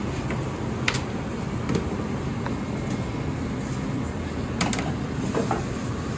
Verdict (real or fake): real